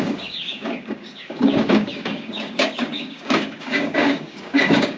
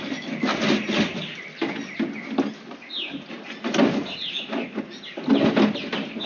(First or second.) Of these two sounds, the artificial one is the first